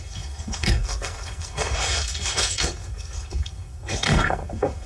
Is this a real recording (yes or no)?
no